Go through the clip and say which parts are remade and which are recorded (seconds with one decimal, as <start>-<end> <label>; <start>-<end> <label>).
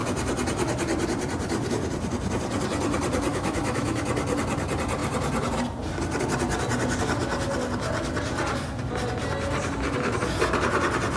0.0-3.3 recorded; 3.3-4.0 remade; 4.0-11.2 recorded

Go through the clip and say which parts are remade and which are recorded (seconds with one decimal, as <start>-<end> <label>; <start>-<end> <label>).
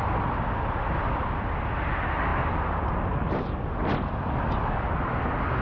0.0-2.3 recorded; 2.3-4.4 remade; 4.4-5.6 recorded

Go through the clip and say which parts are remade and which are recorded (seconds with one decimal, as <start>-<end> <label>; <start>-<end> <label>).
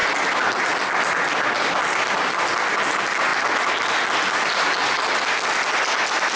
0.0-6.4 recorded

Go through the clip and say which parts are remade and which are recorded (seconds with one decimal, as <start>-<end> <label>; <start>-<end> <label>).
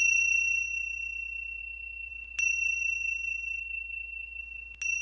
0.0-1.6 recorded; 1.6-2.1 remade; 2.1-3.6 recorded; 3.6-4.4 remade; 4.4-5.0 recorded